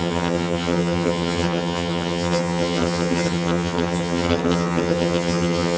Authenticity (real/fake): fake